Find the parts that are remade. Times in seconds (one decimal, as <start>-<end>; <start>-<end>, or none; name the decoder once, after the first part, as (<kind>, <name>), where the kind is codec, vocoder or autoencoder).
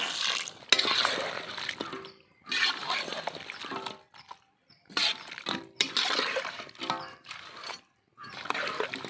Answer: none